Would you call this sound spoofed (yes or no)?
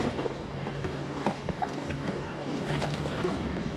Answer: yes